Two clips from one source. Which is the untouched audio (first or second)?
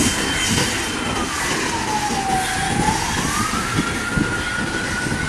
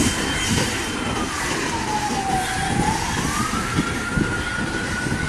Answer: first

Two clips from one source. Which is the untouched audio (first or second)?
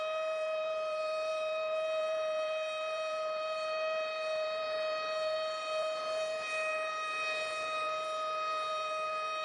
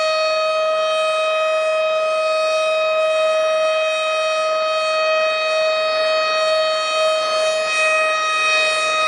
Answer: second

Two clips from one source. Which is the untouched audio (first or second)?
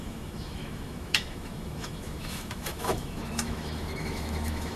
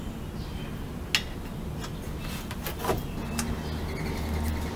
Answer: second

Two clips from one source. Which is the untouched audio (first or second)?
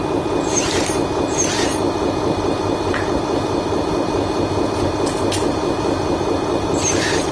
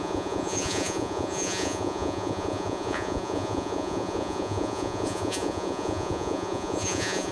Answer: first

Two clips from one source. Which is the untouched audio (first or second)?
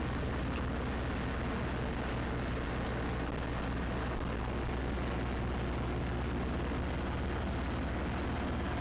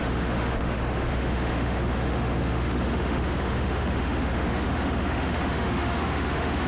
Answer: first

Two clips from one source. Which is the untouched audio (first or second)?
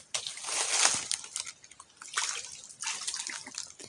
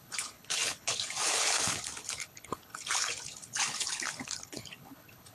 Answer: first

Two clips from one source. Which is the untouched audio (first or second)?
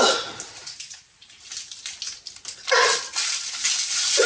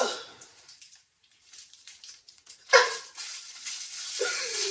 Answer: first